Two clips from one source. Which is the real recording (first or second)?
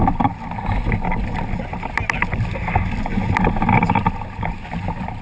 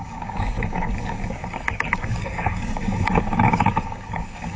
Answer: first